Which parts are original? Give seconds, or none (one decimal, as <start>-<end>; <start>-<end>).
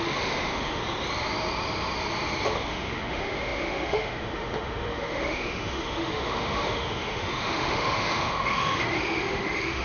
0.8-2.7